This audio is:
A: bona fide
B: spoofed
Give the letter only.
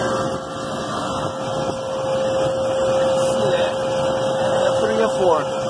A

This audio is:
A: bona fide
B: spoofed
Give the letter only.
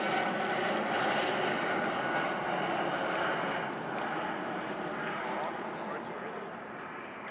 A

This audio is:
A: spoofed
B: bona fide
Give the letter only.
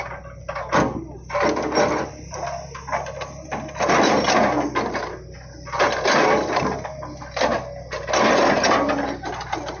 B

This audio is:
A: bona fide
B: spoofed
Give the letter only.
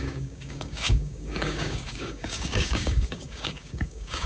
B